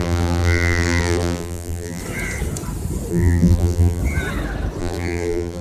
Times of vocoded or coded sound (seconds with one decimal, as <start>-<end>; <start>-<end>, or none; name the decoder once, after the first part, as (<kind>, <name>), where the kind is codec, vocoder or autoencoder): 0.0-2.0 (vocoder, BigVGAN v2); 3.1-4.0; 4.8-5.6